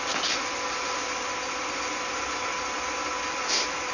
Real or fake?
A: real